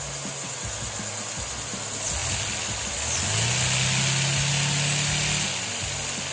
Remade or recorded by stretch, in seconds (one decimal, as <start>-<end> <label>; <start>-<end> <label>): 0.0-6.3 recorded